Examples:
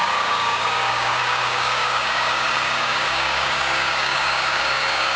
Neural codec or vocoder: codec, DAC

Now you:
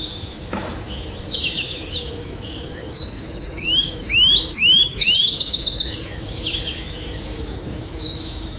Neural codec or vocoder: autoencoder, DAC-VAE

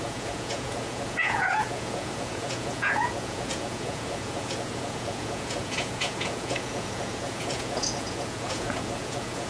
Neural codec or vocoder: vocoder, Vocos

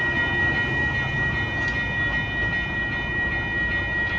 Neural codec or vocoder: none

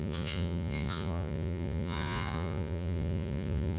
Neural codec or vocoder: vocoder, Vocos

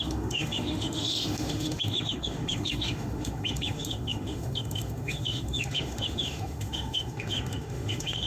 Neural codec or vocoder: autoencoder, DAC-VAE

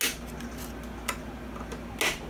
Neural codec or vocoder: none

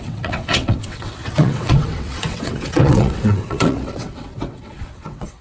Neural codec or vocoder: vocoder, WaveNeXt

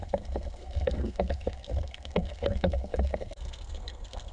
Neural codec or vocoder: codec, SNAC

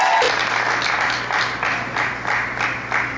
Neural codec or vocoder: none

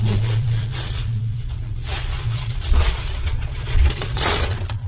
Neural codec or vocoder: vocoder, Vocos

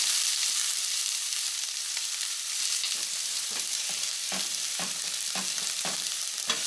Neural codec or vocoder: vocoder, BigVGAN v2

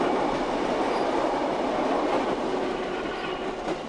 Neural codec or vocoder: none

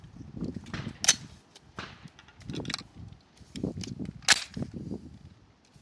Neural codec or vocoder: none